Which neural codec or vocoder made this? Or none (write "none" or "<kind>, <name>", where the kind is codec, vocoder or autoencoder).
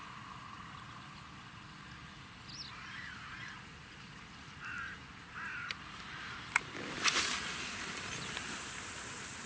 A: none